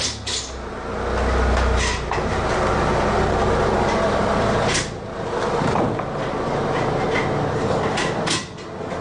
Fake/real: real